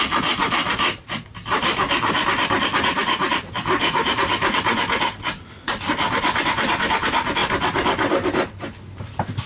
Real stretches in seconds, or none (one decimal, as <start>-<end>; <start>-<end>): 7.4-9.5